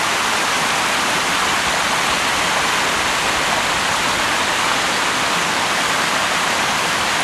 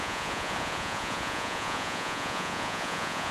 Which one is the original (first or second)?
first